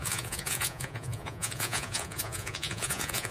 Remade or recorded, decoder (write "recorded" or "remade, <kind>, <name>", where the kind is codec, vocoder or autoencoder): remade, vocoder, Vocos